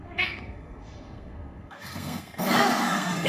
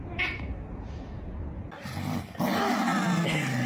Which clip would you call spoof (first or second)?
first